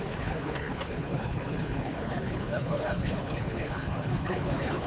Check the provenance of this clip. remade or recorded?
remade